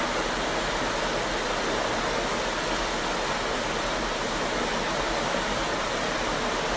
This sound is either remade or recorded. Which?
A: recorded